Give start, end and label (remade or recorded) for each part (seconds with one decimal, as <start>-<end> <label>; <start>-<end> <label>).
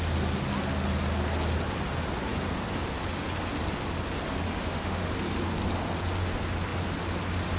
0.0-4.5 recorded; 4.5-5.1 remade; 5.1-7.6 recorded